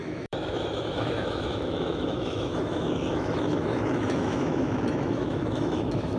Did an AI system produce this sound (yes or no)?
yes